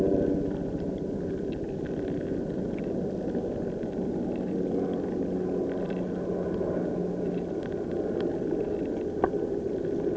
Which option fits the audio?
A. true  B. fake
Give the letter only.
A